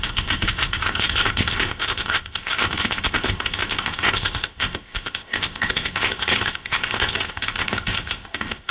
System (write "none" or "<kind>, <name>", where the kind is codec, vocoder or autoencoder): codec, ZipCodec